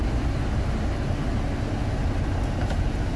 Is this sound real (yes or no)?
yes